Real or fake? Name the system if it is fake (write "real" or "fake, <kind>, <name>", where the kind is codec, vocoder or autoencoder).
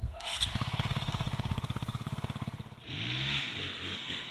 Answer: fake, codec, SNAC